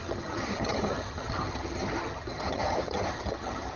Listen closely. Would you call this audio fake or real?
fake